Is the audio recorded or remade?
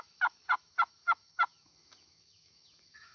remade